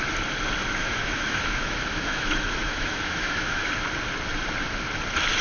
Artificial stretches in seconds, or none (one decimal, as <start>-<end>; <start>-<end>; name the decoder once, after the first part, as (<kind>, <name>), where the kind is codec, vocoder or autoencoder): 0.8-3.7 (autoencoder, DAC-VAE)